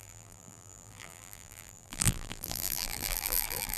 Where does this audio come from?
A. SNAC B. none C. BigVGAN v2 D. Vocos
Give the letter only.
C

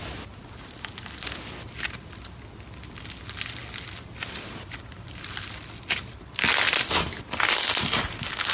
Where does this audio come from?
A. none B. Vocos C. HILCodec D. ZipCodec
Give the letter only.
A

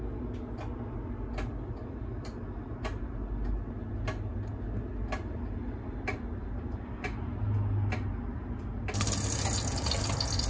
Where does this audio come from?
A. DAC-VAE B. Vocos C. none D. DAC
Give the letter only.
C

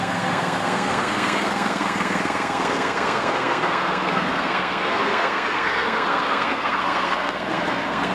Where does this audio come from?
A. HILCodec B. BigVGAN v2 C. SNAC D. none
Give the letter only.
C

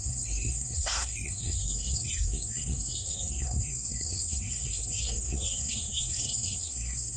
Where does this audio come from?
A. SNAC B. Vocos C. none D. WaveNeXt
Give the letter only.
A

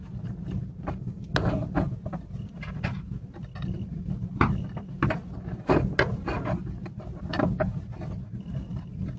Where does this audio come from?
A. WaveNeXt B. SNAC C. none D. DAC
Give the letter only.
C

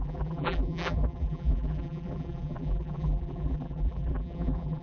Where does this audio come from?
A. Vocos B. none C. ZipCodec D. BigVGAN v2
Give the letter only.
D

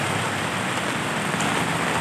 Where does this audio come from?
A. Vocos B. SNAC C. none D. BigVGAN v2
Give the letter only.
C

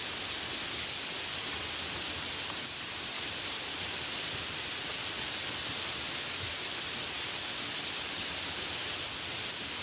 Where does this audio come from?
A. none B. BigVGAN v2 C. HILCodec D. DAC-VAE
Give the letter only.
A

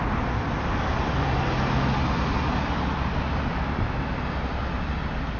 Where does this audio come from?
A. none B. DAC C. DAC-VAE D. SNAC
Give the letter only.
A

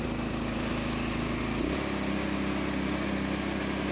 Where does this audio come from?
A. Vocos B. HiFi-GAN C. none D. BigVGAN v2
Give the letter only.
C